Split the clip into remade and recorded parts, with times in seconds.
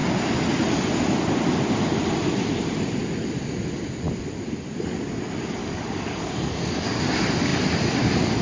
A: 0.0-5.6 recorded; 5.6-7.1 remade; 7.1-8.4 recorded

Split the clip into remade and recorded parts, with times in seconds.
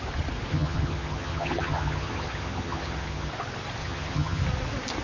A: 0.0-0.5 recorded; 0.5-3.3 remade; 3.3-3.8 recorded; 3.8-4.4 remade; 4.4-5.0 recorded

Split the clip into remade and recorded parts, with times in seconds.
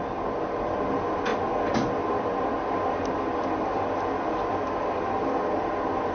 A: 0.0-6.1 recorded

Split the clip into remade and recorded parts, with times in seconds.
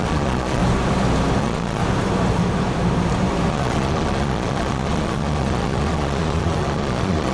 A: 0.0-0.6 remade; 0.6-1.4 recorded; 1.4-1.8 remade; 1.8-3.5 recorded; 3.5-7.3 remade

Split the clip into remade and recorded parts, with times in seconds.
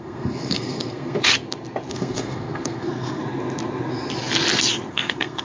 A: 0.0-1.3 remade; 1.3-1.9 recorded; 1.9-3.2 remade; 3.2-4.9 recorded; 4.9-5.4 remade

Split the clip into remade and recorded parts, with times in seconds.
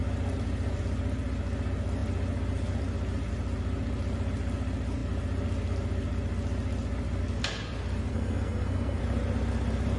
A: 0.0-8.1 recorded; 8.1-9.0 remade; 9.0-10.0 recorded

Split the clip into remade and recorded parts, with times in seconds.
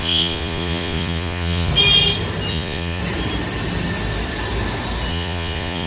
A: 0.0-1.7 remade; 1.7-2.5 recorded; 2.5-3.0 remade; 3.0-5.1 recorded; 5.1-5.9 remade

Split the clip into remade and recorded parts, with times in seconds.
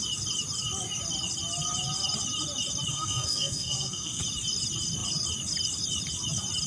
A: 0.0-2.9 recorded; 2.9-4.2 remade; 4.2-6.7 recorded